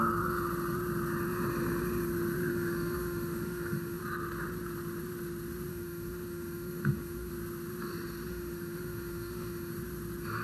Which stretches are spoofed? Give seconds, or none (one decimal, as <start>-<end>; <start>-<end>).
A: 2.5-4.0; 5.7-7.3; 8.3-9.7